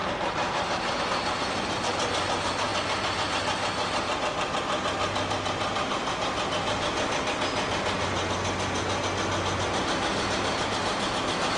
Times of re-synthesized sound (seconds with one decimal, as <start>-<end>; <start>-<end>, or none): 0.0-1.0